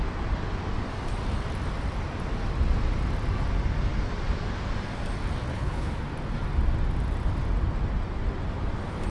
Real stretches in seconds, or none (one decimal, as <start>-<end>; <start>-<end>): 0.0-5.5; 6.0-9.1